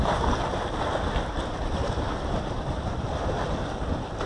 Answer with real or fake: real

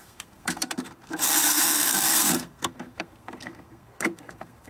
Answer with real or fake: fake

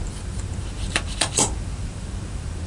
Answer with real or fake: fake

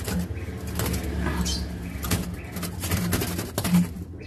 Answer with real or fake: real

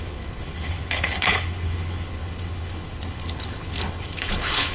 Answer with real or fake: fake